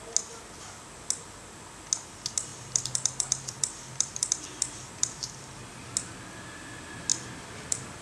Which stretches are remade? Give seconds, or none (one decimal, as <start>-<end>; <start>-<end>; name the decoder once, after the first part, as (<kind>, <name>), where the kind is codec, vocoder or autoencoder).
2.5-5.5 (vocoder, BigVGAN v2); 7.1-8.0